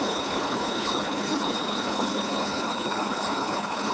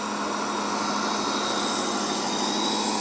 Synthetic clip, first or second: first